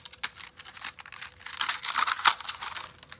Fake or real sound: real